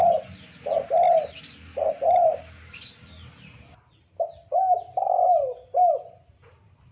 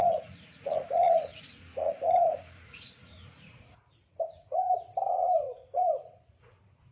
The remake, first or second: second